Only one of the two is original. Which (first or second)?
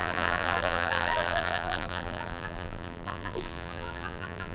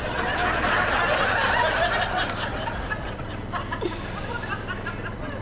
second